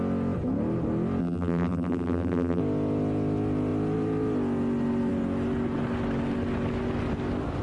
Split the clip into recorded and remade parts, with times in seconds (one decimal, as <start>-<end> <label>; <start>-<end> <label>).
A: 0.0-1.2 recorded; 1.2-2.6 remade; 2.6-7.6 recorded